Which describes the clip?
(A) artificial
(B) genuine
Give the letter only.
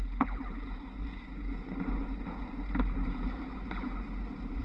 A